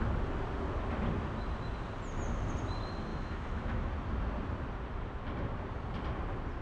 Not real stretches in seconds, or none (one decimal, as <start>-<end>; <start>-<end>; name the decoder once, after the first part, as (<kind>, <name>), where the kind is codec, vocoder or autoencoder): 3.1-3.9 (autoencoder, DAC-VAE)